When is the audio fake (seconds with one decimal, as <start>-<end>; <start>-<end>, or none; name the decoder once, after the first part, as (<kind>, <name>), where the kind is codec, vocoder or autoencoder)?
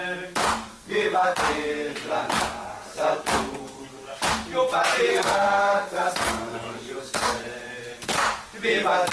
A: 0.7-1.4 (codec, SNAC); 5.1-7.4